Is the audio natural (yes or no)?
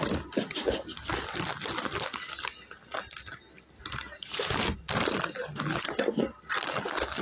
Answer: yes